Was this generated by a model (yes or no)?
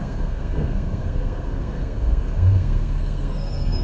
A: yes